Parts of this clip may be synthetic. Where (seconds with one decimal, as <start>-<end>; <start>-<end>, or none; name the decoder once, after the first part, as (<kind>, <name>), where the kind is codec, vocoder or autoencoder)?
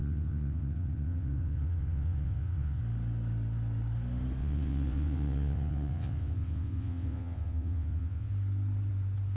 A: 0.0-2.8 (vocoder, WaveNeXt); 4.4-8.3